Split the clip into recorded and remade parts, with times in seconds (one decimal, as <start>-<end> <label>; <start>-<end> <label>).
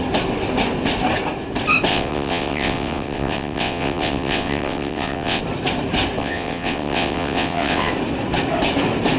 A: 0.0-1.9 recorded; 1.9-5.4 remade; 5.4-6.2 recorded; 6.2-7.9 remade; 7.9-9.2 recorded